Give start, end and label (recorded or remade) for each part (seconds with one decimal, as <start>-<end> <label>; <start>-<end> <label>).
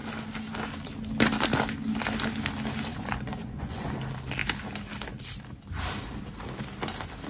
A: 0.0-2.9 recorded; 2.9-3.9 remade; 3.9-7.3 recorded